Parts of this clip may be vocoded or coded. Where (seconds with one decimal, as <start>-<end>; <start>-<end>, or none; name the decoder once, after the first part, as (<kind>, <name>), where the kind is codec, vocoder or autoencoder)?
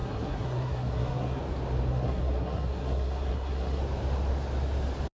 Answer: 0.0-1.4 (codec, SNAC); 1.9-3.8